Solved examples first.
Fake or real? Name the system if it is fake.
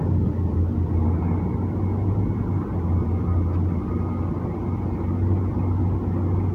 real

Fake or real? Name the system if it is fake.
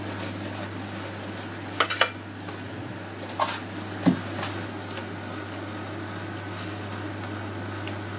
real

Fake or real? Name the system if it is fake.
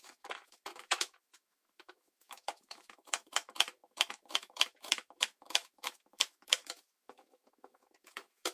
fake, autoencoder, DAC-VAE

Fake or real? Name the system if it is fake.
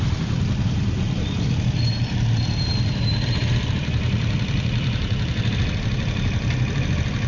fake, vocoder, BigVGAN v2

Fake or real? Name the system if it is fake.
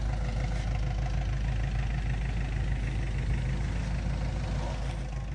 real